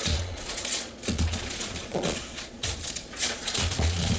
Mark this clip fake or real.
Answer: fake